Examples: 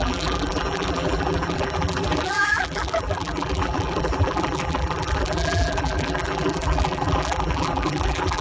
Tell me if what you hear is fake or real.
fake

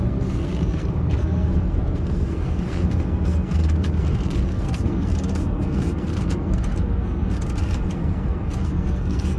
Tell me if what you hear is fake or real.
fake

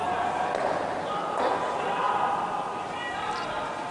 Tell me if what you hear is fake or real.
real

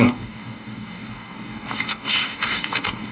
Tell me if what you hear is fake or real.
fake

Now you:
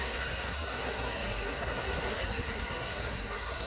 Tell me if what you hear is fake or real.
fake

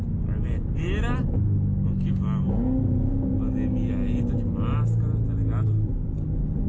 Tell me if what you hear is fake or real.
real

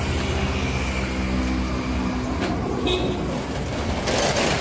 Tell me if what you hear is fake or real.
real